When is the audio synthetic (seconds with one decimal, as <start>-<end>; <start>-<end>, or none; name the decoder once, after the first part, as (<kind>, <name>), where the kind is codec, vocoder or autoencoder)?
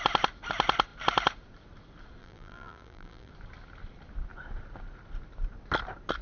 2.2-3.3 (vocoder, BigVGAN v2)